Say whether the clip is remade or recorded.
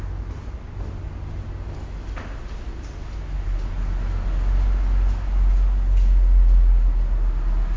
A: recorded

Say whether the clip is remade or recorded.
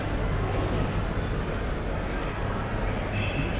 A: recorded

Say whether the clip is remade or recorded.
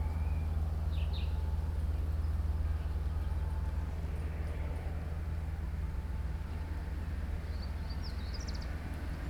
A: recorded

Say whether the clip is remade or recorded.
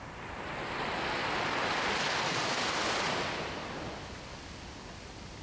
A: recorded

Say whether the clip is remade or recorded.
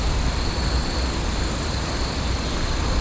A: recorded